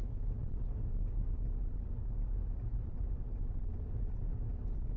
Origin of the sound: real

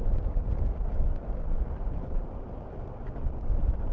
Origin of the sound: real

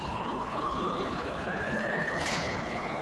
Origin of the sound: fake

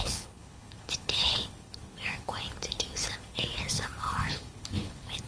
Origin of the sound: fake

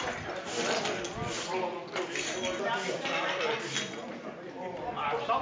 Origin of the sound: real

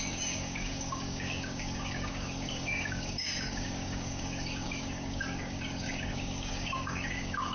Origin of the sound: fake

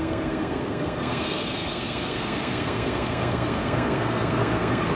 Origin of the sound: fake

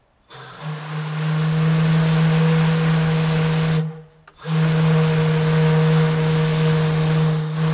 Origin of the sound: real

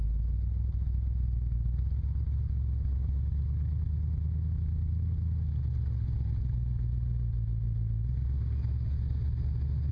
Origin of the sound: real